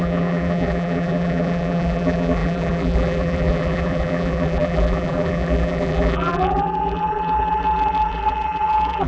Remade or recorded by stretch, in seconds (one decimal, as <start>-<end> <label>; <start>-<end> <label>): 0.0-9.1 remade

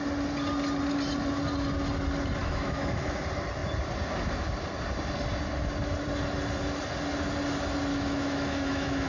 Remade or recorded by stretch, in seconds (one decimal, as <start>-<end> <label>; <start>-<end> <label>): 0.0-2.4 recorded; 2.4-3.2 remade; 3.2-7.9 recorded; 7.9-9.1 remade

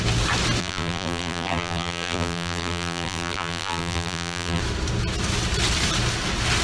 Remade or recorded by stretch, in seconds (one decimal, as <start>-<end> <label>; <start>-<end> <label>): 0.0-0.6 recorded; 0.6-4.6 remade; 4.6-6.6 recorded

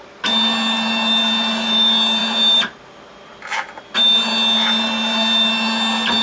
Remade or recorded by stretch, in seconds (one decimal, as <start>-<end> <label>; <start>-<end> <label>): 0.0-6.2 recorded

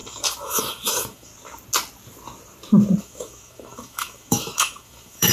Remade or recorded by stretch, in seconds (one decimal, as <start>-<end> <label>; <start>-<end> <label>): 0.0-1.3 remade; 1.3-3.0 recorded; 3.0-5.3 remade

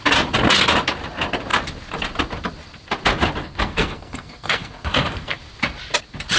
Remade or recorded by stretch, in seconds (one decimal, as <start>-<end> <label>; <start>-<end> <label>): 0.0-3.4 recorded; 3.4-5.4 remade; 5.4-6.4 recorded

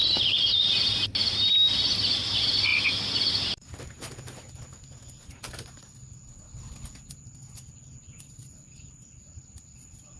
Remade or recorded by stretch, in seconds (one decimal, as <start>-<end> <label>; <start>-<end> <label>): 0.0-10.2 recorded

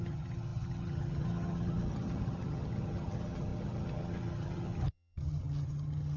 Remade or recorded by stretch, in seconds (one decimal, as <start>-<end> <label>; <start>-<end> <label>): 0.0-6.2 remade